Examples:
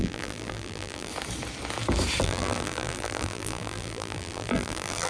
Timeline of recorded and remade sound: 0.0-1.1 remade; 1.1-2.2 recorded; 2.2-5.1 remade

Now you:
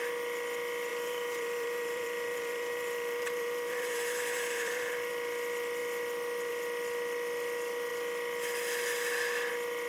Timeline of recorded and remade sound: 0.0-0.9 recorded; 0.9-5.1 remade; 5.1-9.9 recorded

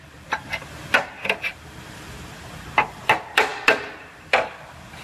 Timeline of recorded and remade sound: 0.0-5.0 recorded

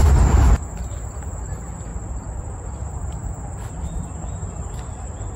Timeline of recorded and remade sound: 0.0-1.9 recorded; 1.9-4.1 remade; 4.1-5.4 recorded

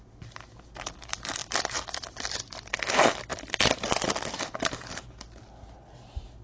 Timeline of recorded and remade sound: 0.0-1.4 recorded; 1.4-2.7 remade; 2.7-6.4 recorded

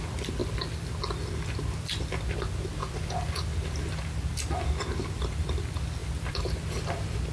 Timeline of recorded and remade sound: 0.0-0.4 recorded; 0.4-0.9 remade; 0.9-6.0 recorded; 6.0-6.6 remade; 6.6-7.3 recorded

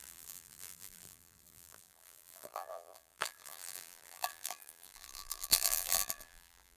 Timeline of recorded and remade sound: 0.0-6.8 remade